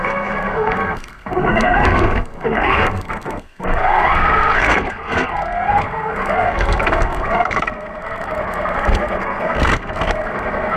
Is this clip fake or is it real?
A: fake